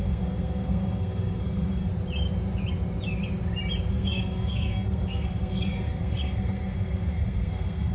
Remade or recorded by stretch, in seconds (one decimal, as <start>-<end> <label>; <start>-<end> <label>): 0.0-1.9 remade; 1.9-3.9 recorded; 3.9-7.9 remade